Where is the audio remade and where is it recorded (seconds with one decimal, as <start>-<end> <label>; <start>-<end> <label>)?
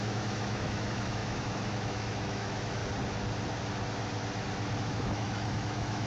0.0-2.8 remade; 2.8-4.8 recorded; 4.8-6.1 remade